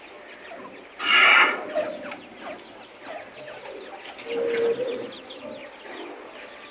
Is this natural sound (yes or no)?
yes